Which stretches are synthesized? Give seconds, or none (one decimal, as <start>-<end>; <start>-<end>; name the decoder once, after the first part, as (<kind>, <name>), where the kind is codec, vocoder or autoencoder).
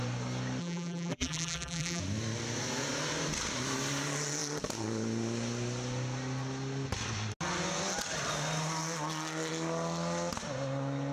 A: 0.6-2.0 (vocoder, BigVGAN v2)